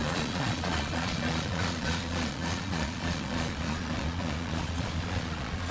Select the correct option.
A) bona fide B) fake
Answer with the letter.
B